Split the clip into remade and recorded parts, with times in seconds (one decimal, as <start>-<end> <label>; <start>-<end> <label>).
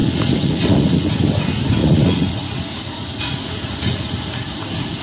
0.0-1.2 remade; 1.2-1.8 recorded; 1.8-5.0 remade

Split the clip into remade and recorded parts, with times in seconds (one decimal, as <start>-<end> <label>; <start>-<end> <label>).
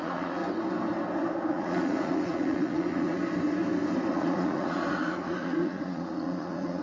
0.0-0.4 remade; 0.4-1.5 recorded; 1.5-3.2 remade; 3.2-4.1 recorded; 4.1-6.8 remade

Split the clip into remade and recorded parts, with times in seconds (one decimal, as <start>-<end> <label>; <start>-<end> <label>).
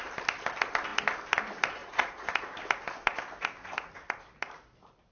0.0-1.8 recorded; 1.8-2.3 remade; 2.3-5.1 recorded